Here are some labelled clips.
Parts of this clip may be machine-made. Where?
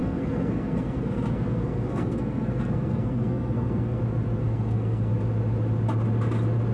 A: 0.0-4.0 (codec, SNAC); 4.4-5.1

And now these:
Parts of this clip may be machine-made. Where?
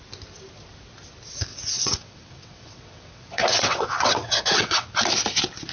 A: 1.5-4.9 (vocoder, WaveNeXt)